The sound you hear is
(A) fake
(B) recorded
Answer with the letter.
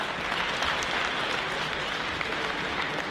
B